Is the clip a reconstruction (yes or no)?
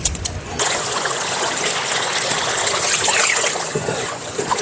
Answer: yes